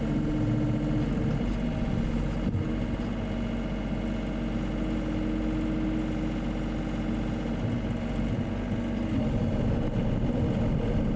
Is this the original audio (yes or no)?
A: yes